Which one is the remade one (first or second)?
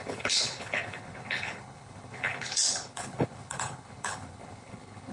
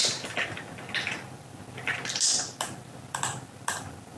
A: first